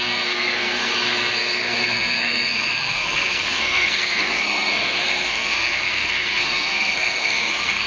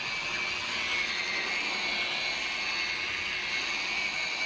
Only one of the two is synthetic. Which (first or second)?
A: first